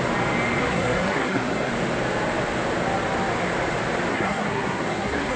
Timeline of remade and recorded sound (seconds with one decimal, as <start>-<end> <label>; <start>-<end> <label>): 0.0-0.6 recorded; 0.6-1.7 remade; 1.7-4.1 recorded; 4.1-5.4 remade